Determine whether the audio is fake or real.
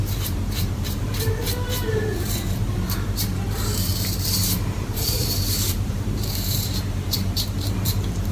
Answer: fake